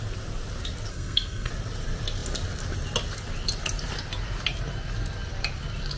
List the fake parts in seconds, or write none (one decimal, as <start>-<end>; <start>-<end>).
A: 0.9-1.5